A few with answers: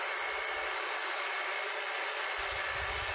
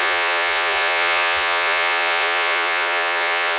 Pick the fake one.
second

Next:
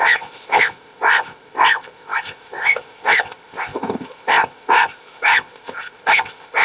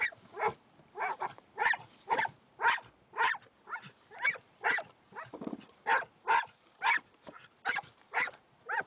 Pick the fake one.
first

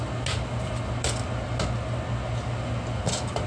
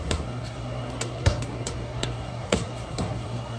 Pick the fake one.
second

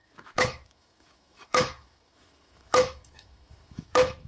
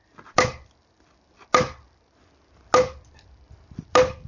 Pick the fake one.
first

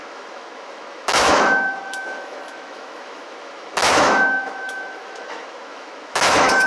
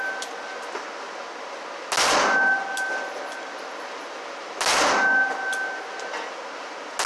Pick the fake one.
first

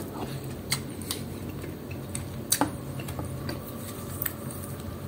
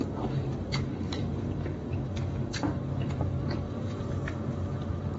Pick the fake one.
second